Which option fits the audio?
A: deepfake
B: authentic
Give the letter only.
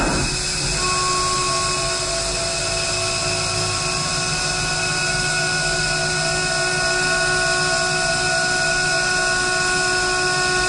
B